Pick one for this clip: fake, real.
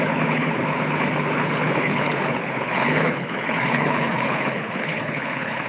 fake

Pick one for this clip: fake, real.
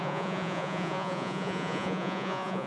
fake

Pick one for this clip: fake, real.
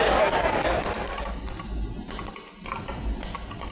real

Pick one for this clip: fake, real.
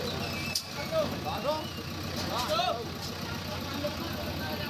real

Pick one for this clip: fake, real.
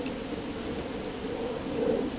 real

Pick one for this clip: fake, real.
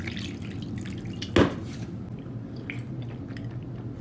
real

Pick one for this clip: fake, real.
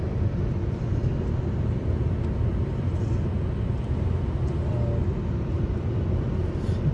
real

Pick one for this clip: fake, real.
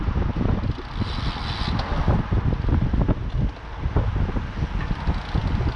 real